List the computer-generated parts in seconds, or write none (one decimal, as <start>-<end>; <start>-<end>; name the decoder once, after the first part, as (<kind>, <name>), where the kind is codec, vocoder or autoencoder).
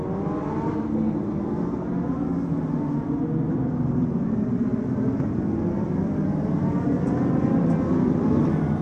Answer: 4.7-8.4 (vocoder, BigVGAN v2)